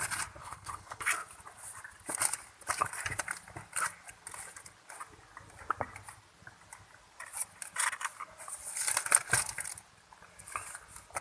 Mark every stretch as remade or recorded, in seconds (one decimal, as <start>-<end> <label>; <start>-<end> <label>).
0.0-0.4 recorded; 0.4-1.1 remade; 1.1-11.2 recorded